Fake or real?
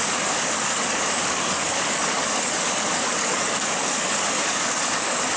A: fake